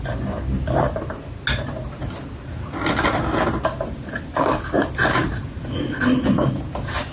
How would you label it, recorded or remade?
recorded